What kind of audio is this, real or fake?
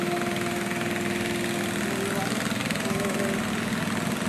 real